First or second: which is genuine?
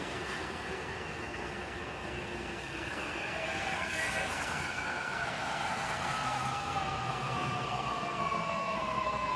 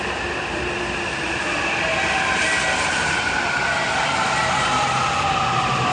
second